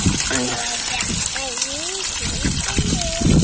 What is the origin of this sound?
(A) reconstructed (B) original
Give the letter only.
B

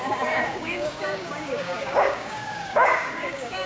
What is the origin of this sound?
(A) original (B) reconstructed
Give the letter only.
B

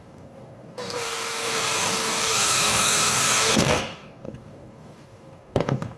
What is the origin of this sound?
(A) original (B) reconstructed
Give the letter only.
B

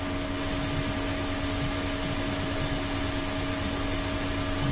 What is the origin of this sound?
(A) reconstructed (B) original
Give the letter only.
B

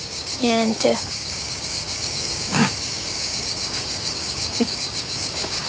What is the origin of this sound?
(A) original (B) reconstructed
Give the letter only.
B